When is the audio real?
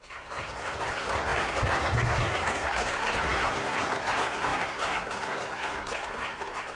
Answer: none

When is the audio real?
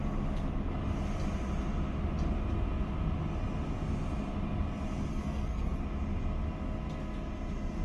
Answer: 0.0-5.1; 5.8-7.8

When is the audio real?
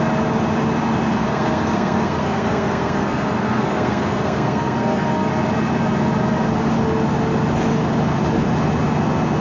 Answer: 0.0-1.2; 5.3-9.4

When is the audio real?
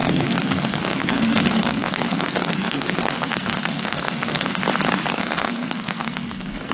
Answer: 4.6-5.1